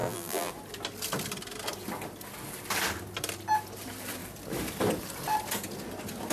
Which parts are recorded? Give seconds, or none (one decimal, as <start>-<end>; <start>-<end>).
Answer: 0.5-6.3